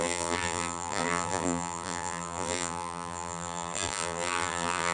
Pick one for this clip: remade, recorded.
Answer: remade